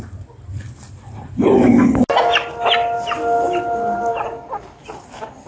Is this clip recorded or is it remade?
recorded